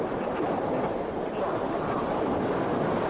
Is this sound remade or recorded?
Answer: recorded